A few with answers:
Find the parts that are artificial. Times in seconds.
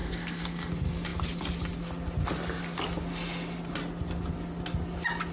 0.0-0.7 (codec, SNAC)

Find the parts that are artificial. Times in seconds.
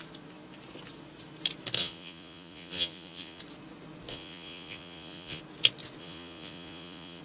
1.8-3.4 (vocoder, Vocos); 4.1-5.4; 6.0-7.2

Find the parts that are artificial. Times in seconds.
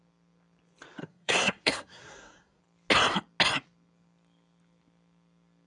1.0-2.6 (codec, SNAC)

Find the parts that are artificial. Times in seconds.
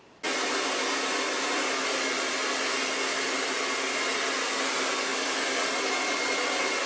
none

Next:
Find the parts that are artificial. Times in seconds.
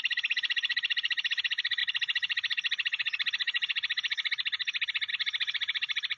0.0-1.8 (vocoder, BigVGAN v2); 5.1-6.2